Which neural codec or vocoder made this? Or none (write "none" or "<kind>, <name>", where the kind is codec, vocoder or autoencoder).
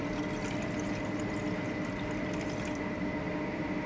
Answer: none